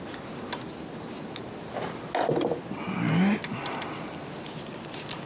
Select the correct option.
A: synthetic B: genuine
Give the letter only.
B